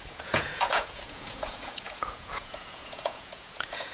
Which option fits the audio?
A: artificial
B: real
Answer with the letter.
A